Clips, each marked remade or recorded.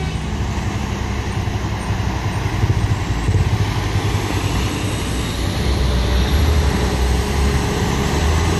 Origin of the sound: recorded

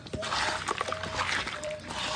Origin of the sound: recorded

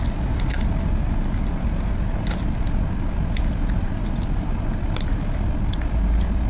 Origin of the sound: recorded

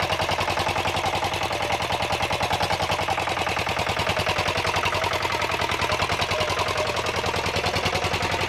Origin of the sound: recorded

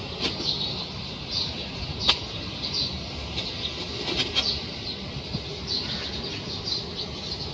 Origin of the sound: recorded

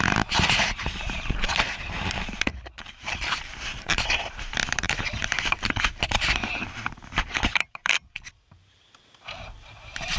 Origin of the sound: remade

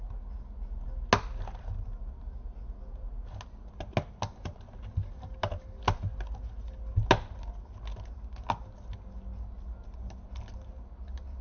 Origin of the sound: recorded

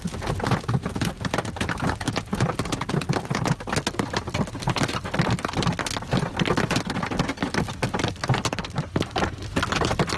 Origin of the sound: recorded